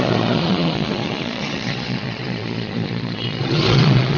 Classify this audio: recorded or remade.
remade